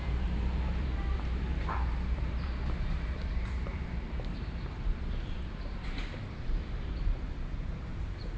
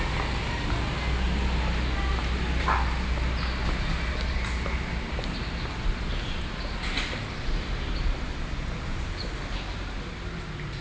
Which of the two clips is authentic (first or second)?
second